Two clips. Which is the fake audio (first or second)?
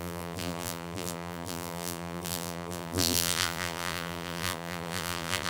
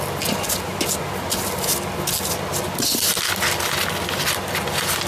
first